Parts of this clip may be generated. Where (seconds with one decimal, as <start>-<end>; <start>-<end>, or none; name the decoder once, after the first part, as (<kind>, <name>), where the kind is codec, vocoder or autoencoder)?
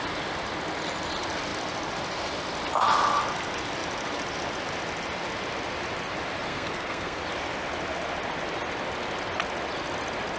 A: 6.5-7.2 (codec, SNAC)